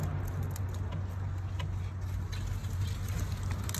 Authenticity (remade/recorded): recorded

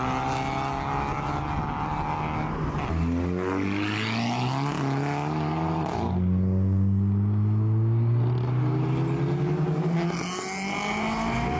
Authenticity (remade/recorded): recorded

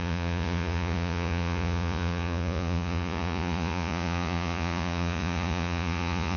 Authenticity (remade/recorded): remade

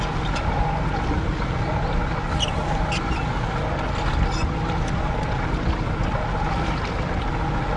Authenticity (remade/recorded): recorded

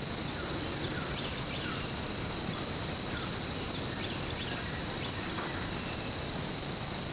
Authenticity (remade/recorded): recorded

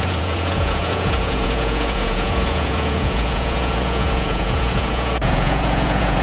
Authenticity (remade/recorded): remade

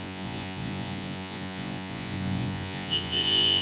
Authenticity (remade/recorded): remade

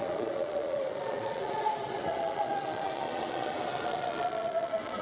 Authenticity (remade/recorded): remade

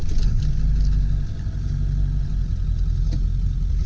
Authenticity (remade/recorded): recorded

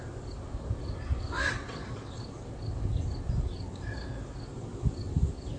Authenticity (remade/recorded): recorded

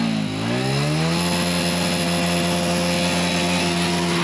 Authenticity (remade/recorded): recorded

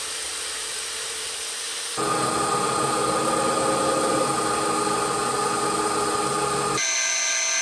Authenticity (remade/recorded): recorded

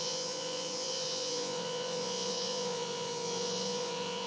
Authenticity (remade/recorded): remade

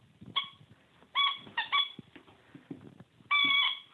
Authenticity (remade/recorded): recorded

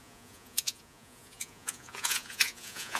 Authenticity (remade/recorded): remade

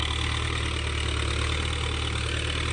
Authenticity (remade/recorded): recorded